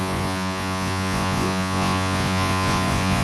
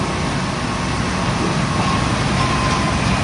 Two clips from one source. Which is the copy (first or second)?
first